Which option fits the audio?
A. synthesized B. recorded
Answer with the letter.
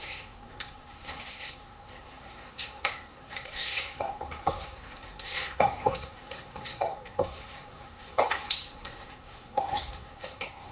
A